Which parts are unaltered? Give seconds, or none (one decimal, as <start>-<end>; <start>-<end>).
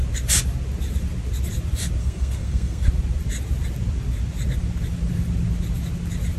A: 0.0-2.0; 2.9-6.4